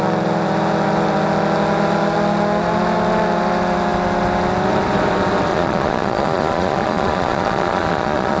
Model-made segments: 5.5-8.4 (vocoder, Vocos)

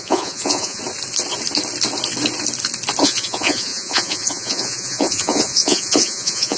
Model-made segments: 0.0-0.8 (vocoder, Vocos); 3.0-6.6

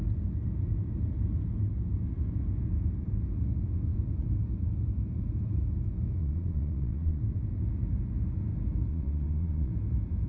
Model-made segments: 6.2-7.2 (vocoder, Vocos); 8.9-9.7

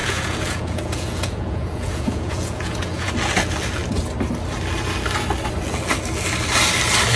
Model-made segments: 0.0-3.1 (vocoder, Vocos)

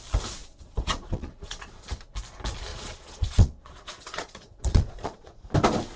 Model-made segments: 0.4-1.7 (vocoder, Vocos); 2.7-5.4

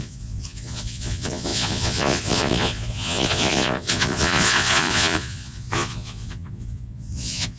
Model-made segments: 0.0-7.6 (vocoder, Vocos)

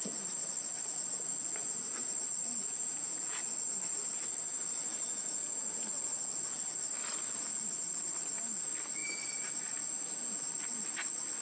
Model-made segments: 2.6-3.5 (vocoder, Vocos); 5.1-5.8